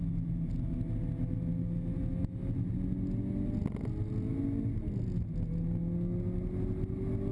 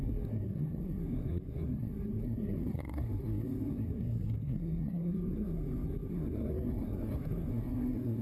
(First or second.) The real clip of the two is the first